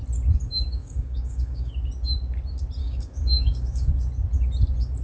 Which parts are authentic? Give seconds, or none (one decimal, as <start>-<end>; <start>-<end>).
0.0-0.8; 1.7-2.8; 3.9-5.0